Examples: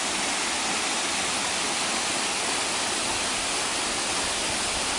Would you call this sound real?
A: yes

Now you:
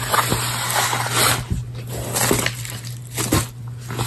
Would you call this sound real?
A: yes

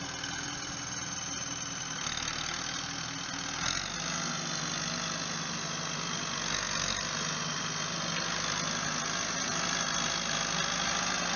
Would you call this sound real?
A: yes